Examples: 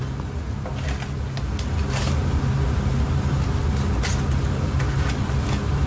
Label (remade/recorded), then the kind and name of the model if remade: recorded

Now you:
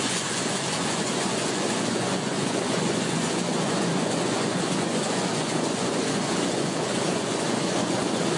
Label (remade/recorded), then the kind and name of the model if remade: remade, vocoder, Vocos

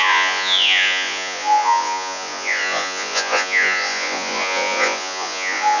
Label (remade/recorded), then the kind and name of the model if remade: remade, vocoder, Vocos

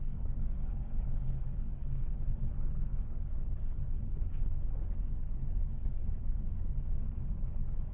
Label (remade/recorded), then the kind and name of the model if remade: remade, codec, HILCodec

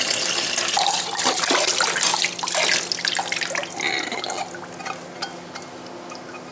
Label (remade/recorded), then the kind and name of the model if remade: recorded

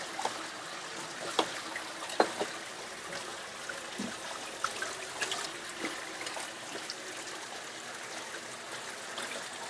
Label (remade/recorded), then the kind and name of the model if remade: recorded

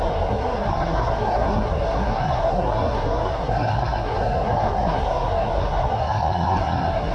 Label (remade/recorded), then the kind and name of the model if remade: remade, codec, SNAC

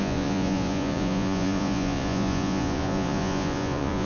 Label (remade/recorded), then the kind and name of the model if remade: remade, vocoder, Vocos